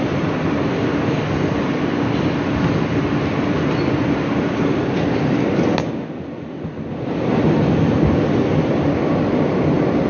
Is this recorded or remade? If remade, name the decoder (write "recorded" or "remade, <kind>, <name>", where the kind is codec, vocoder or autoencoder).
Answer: recorded